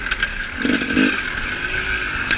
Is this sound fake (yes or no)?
no